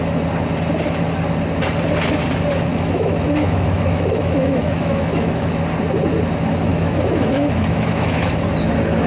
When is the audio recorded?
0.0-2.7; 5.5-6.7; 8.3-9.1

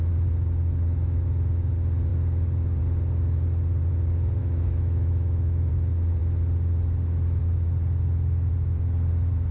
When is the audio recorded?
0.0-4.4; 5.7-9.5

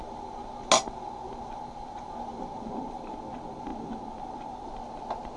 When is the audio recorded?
0.0-5.4

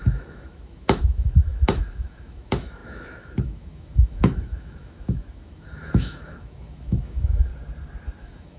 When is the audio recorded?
7.5-8.2